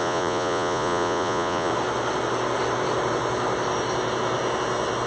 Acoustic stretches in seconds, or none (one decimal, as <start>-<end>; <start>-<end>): 1.7-5.1